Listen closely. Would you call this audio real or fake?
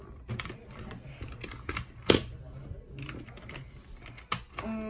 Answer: real